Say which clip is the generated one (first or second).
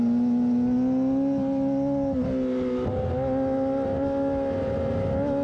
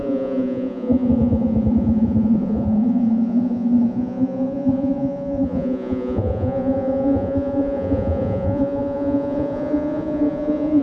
second